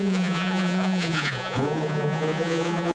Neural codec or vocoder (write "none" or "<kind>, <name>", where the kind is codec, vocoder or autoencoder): vocoder, Vocos